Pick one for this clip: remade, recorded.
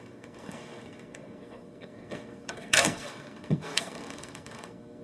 remade